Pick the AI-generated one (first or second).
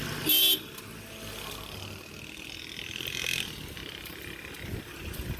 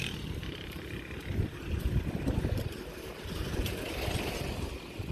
second